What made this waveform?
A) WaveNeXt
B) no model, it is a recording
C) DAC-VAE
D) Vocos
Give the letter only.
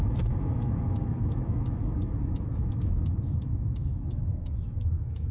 C